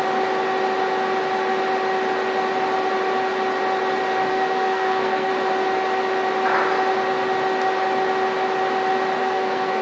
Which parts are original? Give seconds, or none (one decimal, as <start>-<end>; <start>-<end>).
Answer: 0.0-4.3; 5.3-9.2